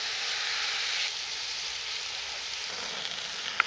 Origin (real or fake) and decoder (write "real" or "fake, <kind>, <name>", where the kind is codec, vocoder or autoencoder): real